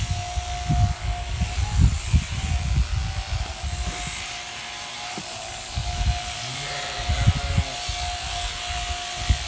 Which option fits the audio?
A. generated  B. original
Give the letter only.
B